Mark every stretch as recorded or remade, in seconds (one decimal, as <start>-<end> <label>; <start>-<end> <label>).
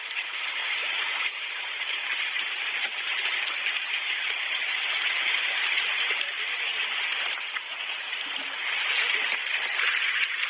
0.0-6.7 remade; 6.7-10.5 recorded